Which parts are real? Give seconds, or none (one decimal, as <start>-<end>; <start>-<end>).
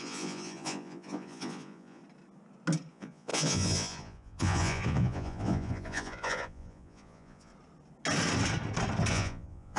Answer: 2.0-2.9; 7.5-9.1